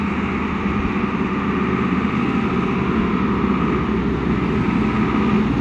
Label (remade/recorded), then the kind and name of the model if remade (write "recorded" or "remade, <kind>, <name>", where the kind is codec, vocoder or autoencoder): recorded